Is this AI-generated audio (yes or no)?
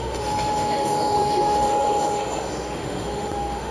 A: yes